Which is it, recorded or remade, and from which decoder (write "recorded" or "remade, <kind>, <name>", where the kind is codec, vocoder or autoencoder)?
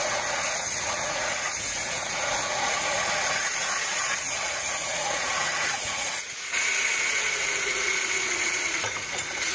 remade, vocoder, Vocos